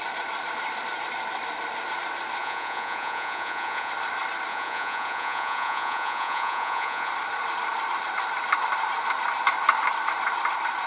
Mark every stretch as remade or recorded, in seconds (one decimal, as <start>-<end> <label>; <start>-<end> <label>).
0.0-2.4 recorded; 2.4-3.9 remade; 3.9-4.5 recorded; 4.5-7.1 remade; 7.1-10.9 recorded